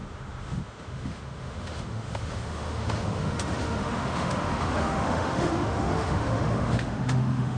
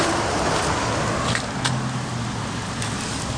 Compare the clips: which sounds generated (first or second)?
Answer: first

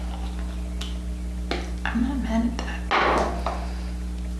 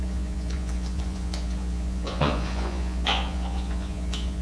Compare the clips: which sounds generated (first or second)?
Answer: second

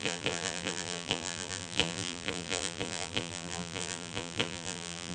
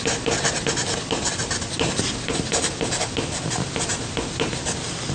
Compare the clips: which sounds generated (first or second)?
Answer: first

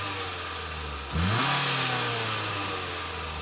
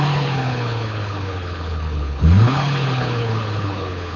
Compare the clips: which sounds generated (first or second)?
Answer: second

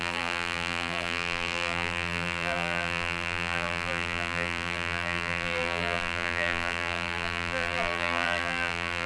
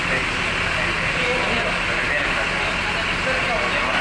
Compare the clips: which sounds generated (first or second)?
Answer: first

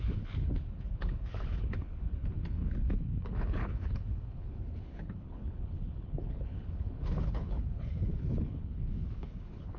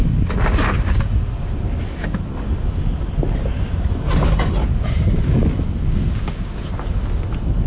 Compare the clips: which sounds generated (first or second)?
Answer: first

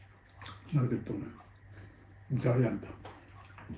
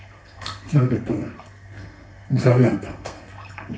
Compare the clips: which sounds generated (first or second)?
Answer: second